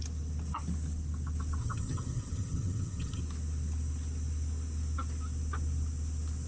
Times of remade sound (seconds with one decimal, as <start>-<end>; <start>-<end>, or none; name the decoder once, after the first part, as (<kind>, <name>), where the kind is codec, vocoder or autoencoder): 1.6-3.2 (vocoder, HiFi-GAN)